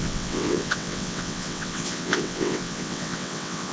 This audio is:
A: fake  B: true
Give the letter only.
A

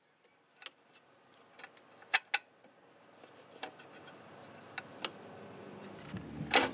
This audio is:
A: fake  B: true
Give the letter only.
B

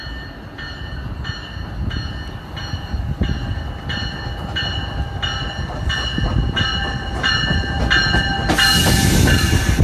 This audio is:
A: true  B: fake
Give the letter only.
A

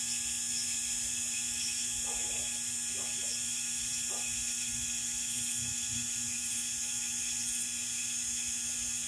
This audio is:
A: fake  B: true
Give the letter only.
B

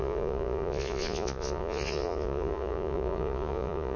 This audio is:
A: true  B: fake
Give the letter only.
B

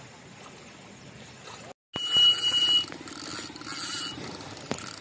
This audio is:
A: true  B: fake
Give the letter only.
A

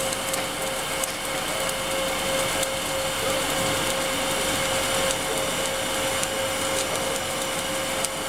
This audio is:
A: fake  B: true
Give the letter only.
B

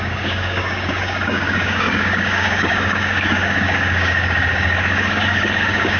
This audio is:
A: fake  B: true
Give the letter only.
A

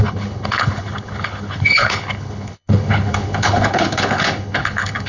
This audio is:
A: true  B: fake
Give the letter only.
B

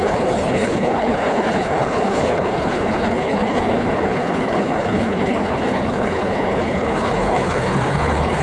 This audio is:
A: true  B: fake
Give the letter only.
B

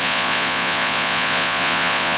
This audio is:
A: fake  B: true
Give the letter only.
A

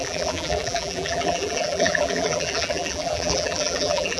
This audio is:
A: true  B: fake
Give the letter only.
B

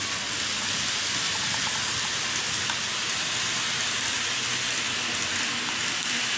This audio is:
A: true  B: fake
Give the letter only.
A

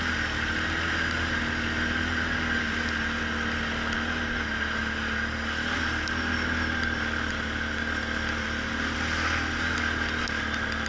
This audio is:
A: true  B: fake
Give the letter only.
A